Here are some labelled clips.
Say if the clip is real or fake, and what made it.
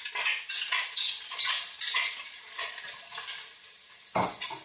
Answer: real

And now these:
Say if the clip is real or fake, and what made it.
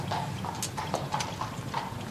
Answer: real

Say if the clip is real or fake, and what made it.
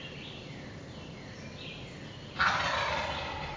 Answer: fake, vocoder, BigVGAN v2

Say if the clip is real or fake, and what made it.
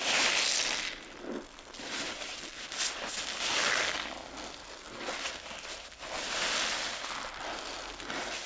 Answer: real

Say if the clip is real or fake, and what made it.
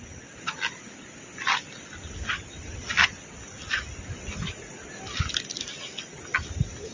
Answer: real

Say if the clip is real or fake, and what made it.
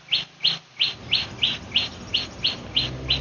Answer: real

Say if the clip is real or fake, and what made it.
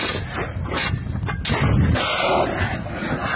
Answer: real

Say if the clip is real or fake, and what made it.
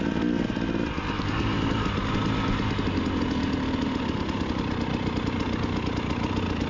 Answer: real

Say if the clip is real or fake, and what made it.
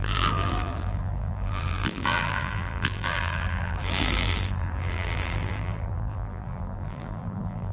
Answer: fake, vocoder, BigVGAN v2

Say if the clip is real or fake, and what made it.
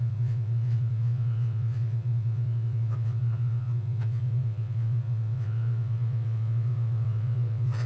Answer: fake, vocoder, WaveNeXt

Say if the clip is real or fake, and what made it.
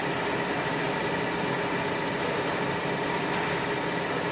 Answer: real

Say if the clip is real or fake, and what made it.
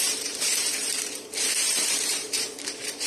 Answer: fake, vocoder, BigVGAN v2